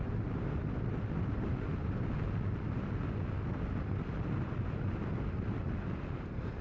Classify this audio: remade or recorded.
recorded